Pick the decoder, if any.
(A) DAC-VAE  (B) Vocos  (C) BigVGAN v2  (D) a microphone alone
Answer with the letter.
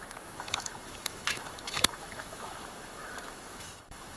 A